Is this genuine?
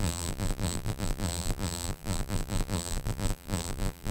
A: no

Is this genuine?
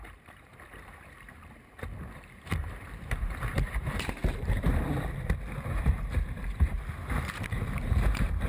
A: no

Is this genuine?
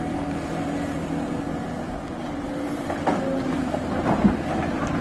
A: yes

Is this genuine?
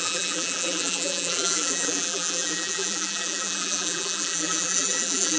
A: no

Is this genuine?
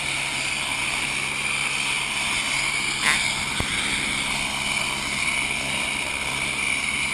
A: yes